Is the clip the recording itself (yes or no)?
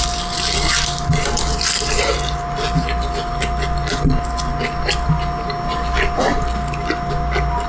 yes